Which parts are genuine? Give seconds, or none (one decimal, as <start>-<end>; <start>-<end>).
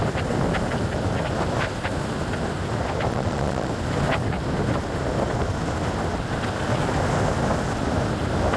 0.0-3.1; 3.7-8.6